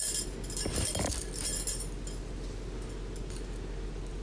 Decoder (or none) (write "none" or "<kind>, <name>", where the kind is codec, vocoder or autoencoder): none